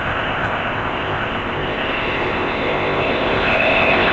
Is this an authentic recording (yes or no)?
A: no